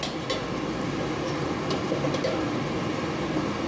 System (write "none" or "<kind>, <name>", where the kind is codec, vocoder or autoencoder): none